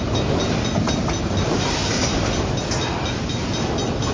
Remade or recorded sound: recorded